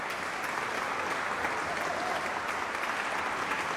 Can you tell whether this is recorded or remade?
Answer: recorded